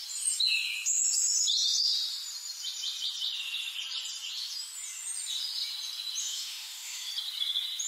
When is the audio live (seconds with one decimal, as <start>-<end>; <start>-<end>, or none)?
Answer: 0.0-6.2; 7.1-7.9